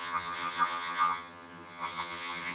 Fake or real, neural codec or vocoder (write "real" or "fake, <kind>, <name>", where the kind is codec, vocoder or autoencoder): fake, vocoder, HiFi-GAN